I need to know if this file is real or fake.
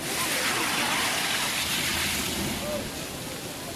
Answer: real